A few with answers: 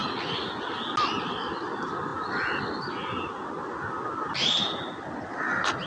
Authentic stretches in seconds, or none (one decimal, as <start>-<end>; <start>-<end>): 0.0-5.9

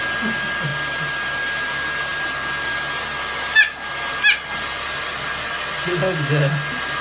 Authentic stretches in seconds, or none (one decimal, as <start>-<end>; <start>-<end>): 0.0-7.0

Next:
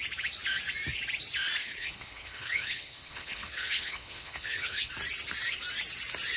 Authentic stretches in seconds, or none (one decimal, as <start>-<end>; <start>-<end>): 0.0-1.6; 4.9-6.4

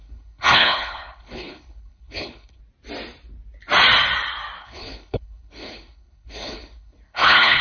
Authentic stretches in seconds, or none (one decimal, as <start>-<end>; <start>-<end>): 2.6-4.6

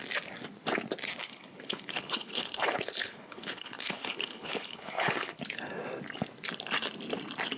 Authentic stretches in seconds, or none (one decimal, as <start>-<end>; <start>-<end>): 0.0-1.2; 5.4-7.6

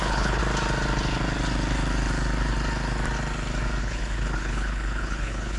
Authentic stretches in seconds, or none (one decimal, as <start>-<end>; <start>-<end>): 0.4-3.8

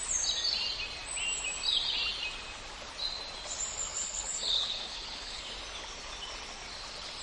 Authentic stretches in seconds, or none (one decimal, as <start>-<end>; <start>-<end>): 0.0-3.9; 5.5-7.2

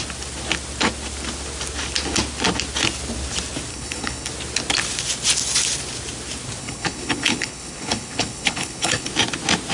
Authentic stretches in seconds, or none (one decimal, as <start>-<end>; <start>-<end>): 0.0-3.7; 4.3-6.6; 9.1-9.7